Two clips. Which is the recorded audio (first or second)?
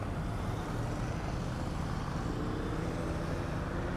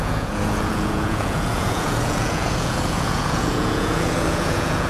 first